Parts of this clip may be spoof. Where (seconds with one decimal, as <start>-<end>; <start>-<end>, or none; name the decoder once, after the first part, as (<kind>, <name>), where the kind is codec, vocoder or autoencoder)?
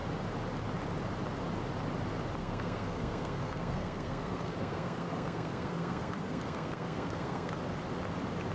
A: 2.4-7.5 (codec, SNAC)